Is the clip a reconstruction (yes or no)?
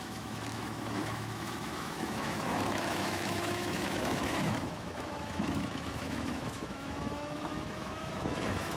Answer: yes